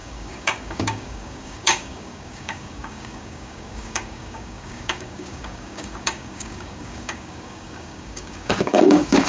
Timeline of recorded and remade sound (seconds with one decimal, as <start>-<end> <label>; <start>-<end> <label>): 0.0-9.3 remade